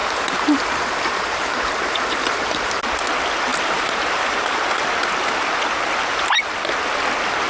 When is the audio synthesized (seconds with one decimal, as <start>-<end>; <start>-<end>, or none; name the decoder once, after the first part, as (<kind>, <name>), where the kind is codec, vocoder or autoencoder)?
0.0-2.8 (vocoder, BigVGAN v2); 3.5-4.7